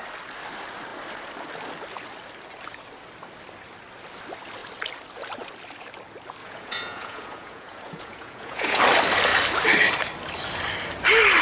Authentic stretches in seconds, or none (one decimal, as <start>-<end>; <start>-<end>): 0.0-6.4; 8.8-11.4